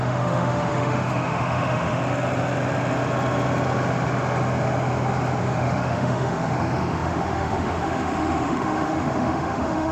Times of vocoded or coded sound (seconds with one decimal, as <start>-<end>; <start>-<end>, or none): 0.0-2.0; 5.4-9.9